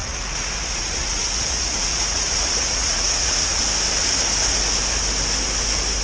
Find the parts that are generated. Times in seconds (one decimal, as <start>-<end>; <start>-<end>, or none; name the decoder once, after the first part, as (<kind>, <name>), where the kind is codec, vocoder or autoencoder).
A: 0.0-3.6 (vocoder, Vocos)